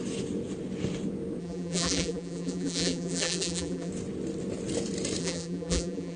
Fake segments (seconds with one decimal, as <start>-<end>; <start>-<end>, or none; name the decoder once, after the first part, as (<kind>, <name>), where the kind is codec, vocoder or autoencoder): 1.4-3.9 (vocoder, BigVGAN v2); 5.2-6.2